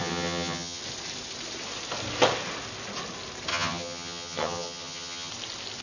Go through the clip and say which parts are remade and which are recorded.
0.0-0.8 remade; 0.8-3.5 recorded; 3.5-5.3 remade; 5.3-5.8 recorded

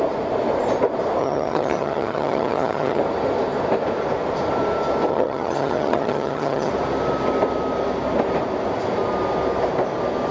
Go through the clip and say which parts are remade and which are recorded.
0.0-1.2 recorded; 1.2-3.0 remade; 3.0-5.1 recorded; 5.1-6.7 remade; 6.7-10.3 recorded

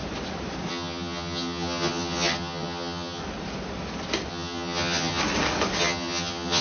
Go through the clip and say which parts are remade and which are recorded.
0.0-0.7 recorded; 0.7-3.2 remade; 3.2-4.3 recorded; 4.3-5.2 remade; 5.2-5.8 recorded; 5.8-6.6 remade